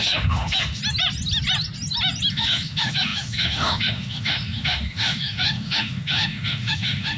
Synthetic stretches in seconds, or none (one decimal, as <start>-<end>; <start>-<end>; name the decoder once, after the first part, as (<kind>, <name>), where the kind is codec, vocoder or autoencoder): 0.0-0.8 (autoencoder, DAC-VAE); 2.3-7.2